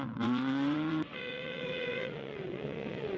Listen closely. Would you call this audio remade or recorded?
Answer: remade